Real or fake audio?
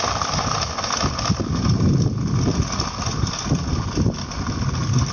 real